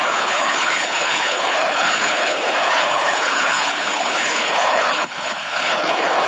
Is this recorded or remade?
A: remade